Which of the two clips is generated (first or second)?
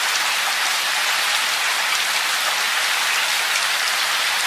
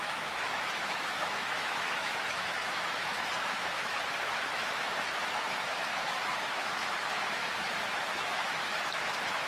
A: second